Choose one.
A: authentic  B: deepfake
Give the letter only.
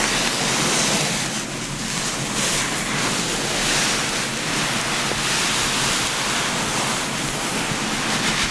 A